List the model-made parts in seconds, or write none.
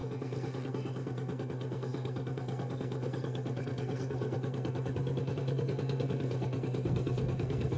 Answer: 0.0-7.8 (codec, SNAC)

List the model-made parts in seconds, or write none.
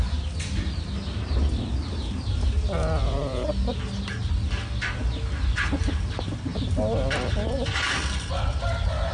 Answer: none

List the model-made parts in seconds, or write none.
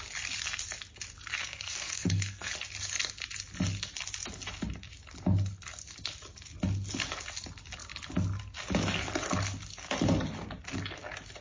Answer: 1.4-2.5 (codec, SNAC)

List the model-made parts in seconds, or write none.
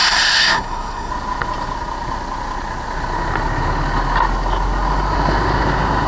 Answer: 0.0-1.1 (codec, SNAC)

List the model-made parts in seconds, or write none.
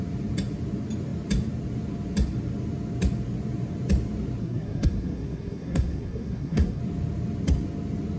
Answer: 4.4-6.8 (codec, SNAC)